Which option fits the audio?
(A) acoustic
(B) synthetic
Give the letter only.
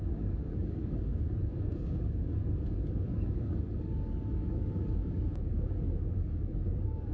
B